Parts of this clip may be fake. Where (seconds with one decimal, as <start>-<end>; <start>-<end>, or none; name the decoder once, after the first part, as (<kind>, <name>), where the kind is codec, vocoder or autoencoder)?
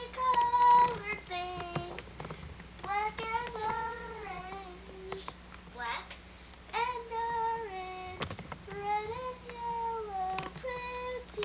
3.6-4.4 (vocoder, WaveNeXt)